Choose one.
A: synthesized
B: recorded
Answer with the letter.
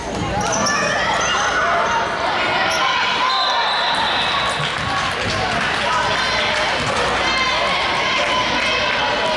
B